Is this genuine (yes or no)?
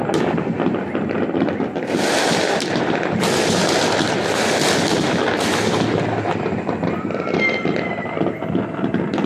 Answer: yes